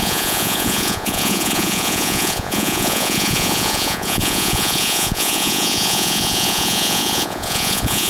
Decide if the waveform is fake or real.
fake